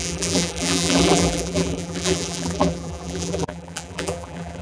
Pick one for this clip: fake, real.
fake